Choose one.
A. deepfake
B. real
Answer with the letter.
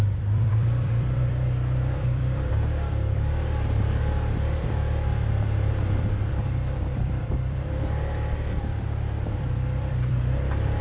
A